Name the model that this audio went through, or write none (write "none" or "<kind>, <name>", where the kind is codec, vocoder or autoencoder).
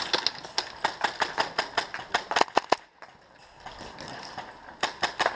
none